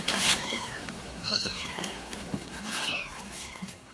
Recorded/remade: remade